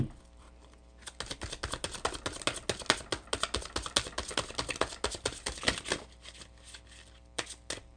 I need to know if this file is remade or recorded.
recorded